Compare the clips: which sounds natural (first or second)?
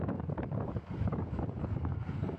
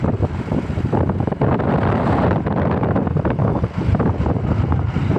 second